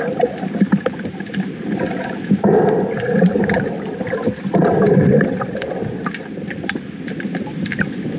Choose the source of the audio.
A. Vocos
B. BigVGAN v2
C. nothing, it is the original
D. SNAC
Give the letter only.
C